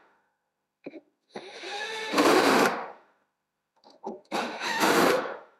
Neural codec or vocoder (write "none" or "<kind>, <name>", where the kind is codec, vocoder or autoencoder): autoencoder, DAC-VAE